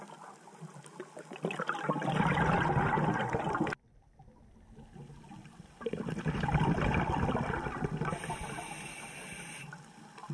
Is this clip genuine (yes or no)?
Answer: yes